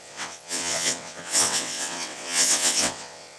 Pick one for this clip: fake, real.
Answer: fake